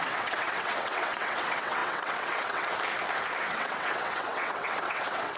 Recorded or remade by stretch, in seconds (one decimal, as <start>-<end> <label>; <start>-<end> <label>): 0.0-2.7 remade; 2.7-3.5 recorded; 3.5-5.4 remade